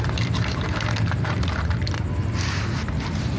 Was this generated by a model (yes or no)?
no